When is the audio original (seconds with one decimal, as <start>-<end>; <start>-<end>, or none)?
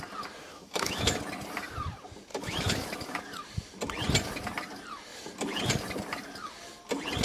0.0-0.5; 1.2-2.3; 3.2-7.2